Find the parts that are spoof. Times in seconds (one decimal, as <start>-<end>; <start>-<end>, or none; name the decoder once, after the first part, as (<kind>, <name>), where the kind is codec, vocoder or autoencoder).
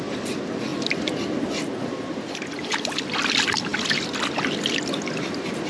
none